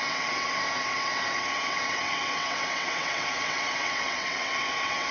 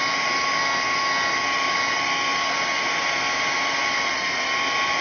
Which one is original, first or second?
second